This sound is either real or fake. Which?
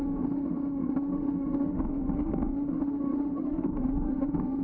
fake